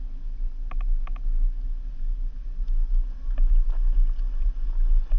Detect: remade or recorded recorded